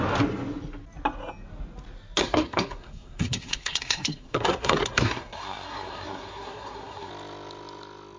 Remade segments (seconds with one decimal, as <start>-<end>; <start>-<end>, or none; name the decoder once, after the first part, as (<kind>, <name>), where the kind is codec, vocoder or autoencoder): 2.2-7.1 (codec, SNAC)

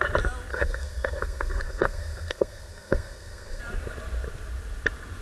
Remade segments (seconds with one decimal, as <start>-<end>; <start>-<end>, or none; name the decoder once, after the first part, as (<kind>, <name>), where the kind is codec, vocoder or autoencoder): 0.5-3.6 (codec, SNAC)